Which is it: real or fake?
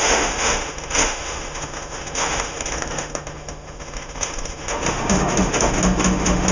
fake